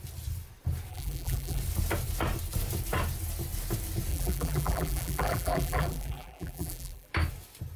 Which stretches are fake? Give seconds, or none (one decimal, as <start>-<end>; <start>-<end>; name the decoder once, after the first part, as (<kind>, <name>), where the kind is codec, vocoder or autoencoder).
0.9-1.6 (vocoder, BigVGAN v2); 4.1-7.1